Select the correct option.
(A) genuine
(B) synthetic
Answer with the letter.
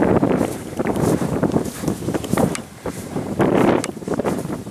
B